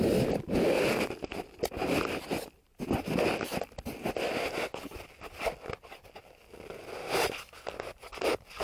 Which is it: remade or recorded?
recorded